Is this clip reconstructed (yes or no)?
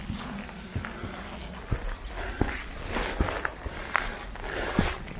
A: no